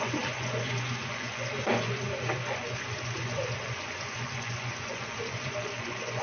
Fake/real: fake